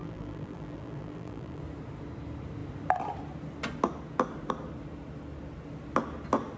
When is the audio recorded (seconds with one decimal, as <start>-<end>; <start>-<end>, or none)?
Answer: 1.6-6.6